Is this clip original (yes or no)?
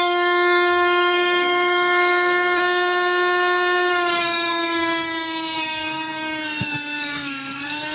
no